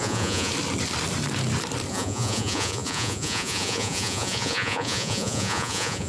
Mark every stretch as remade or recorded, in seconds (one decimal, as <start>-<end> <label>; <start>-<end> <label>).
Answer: 0.0-0.5 remade; 0.5-1.9 recorded; 1.9-6.1 remade